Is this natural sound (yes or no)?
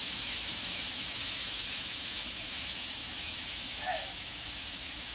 no